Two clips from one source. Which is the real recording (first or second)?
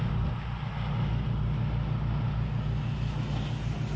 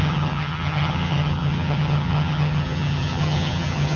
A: first